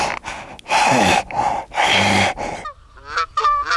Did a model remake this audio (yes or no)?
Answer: no